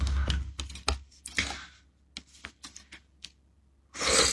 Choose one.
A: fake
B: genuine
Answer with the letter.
B